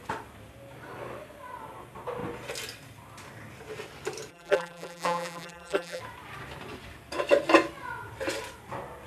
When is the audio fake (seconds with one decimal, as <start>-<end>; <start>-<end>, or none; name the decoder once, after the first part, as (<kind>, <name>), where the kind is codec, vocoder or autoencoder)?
4.3-6.0 (vocoder, BigVGAN v2)